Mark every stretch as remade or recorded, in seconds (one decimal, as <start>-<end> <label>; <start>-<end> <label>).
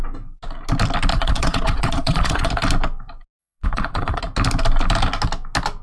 0.0-1.1 recorded; 1.1-2.5 remade; 2.5-3.4 recorded; 3.4-4.2 remade; 4.2-5.8 recorded